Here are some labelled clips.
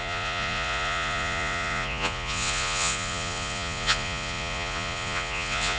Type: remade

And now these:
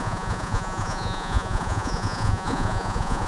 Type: remade